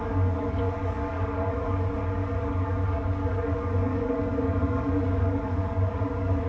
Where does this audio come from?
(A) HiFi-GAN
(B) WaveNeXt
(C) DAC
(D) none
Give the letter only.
C